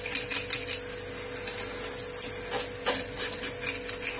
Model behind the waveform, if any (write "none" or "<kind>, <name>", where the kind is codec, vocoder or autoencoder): none